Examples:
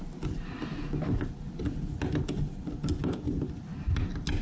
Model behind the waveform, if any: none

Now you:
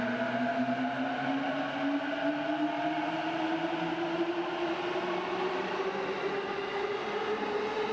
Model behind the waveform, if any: none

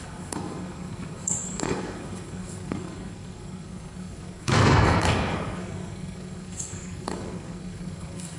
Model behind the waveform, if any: codec, SNAC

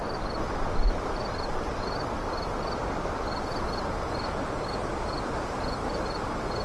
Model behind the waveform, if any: none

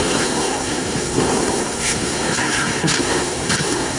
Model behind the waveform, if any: codec, SNAC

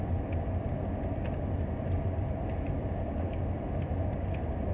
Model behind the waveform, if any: none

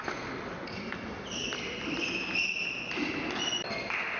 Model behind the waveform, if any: none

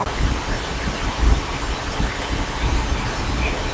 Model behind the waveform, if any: none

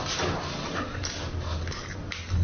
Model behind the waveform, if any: none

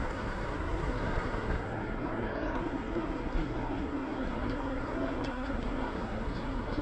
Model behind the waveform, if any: codec, SNAC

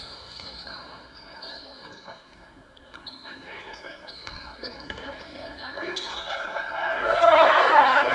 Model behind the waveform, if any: codec, SNAC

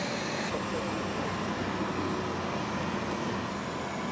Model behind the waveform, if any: none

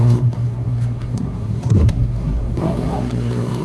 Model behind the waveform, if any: codec, SNAC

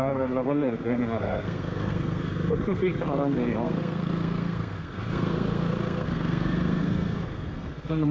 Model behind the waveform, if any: codec, SNAC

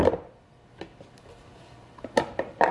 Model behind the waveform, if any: none